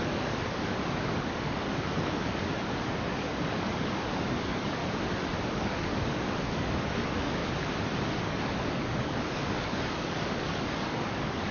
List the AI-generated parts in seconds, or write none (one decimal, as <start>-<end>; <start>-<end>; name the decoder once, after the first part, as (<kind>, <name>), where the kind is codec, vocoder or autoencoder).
0.0-4.8 (codec, DAC); 5.5-7.4; 8.2-11.5